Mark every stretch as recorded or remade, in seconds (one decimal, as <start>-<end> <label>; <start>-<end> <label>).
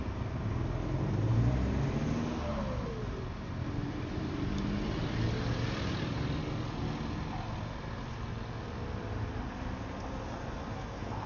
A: 0.0-11.3 recorded